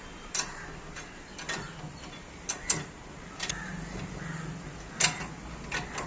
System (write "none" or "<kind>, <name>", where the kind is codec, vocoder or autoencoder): none